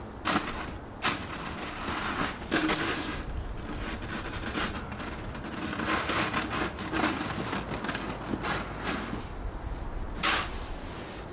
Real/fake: real